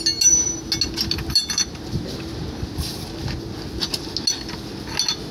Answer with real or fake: real